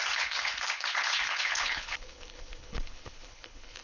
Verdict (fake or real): fake